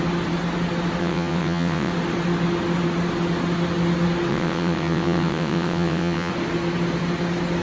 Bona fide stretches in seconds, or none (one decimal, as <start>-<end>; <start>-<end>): 0.0-1.0; 1.9-4.3; 6.3-7.6